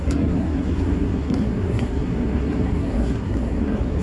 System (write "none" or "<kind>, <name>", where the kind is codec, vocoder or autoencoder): codec, SNAC